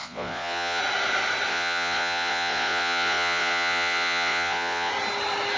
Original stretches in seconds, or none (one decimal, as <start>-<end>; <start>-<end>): 0.8-1.5; 4.9-5.6